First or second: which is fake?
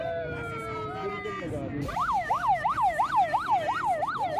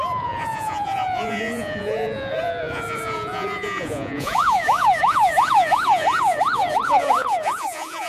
second